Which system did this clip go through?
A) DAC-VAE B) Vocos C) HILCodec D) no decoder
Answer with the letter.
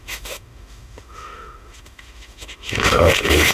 A